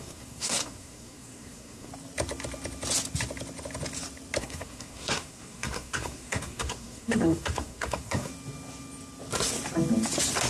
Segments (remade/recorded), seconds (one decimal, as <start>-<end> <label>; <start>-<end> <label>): 0.0-1.9 remade; 1.9-4.4 recorded; 4.4-8.3 remade; 8.3-10.5 recorded